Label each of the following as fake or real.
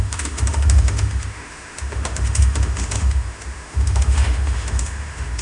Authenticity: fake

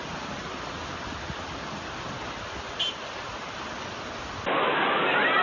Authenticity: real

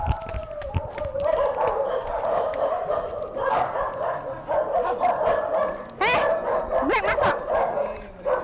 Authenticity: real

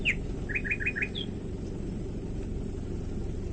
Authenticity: real